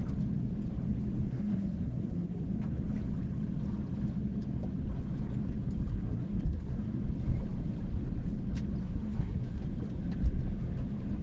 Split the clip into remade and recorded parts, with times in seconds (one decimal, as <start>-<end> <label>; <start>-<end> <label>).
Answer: 0.0-1.3 recorded; 1.3-2.5 remade; 2.5-5.9 recorded; 5.9-7.0 remade; 7.0-8.8 recorded; 8.8-9.6 remade; 9.6-11.2 recorded